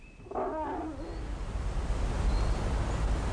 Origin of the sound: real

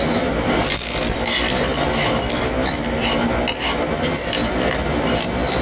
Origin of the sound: real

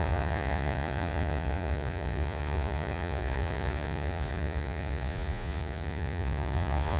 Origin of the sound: fake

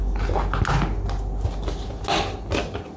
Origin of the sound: real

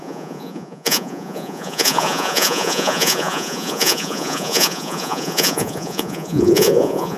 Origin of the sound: fake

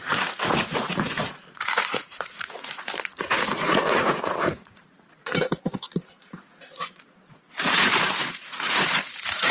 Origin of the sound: fake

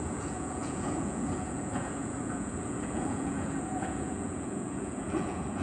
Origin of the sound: fake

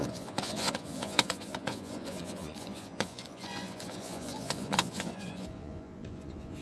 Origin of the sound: fake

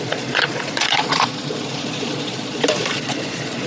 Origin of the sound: fake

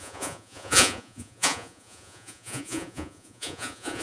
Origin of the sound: fake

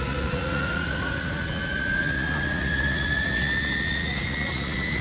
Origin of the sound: fake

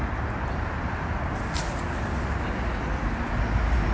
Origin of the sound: real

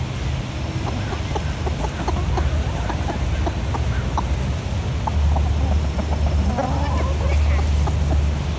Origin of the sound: real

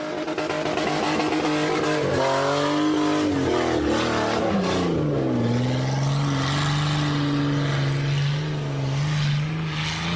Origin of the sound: real